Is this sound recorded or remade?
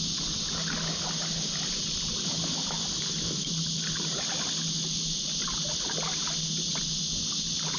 recorded